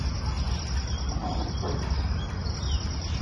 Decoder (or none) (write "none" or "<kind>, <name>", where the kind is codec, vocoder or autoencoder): none